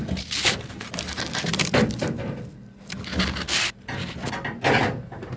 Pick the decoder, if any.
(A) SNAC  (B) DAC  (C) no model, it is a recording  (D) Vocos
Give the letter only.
C